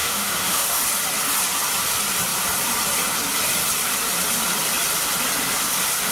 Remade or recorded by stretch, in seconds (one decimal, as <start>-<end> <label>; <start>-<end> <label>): 0.0-0.8 remade; 0.8-6.1 recorded